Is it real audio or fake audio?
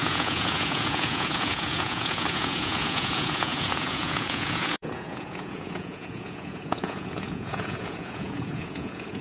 fake